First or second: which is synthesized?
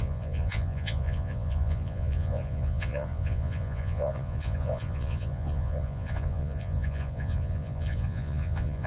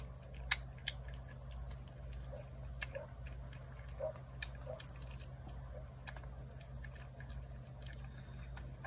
first